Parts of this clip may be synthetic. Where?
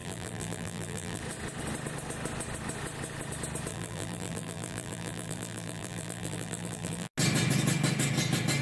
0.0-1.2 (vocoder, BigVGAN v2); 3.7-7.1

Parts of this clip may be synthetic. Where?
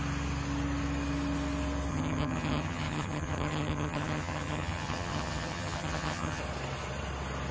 1.9-6.4 (vocoder, HiFi-GAN)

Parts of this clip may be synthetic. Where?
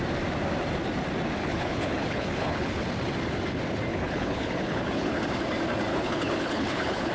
1.4-2.8 (codec, HILCodec); 3.9-5.2; 5.9-7.1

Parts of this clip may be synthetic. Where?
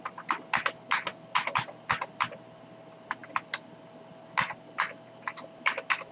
none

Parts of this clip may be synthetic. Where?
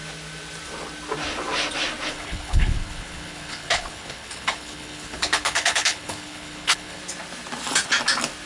2.1-7.0 (codec, HILCodec)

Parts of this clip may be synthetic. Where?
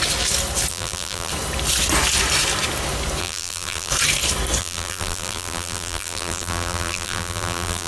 0.7-1.3 (vocoder, BigVGAN v2); 3.2-3.9; 4.6-7.9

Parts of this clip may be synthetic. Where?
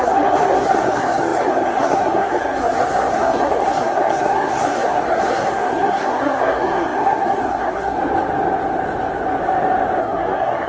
0.0-8.0 (codec, SNAC); 10.0-10.7